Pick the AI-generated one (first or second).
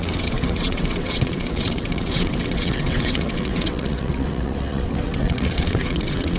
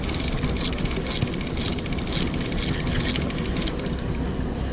first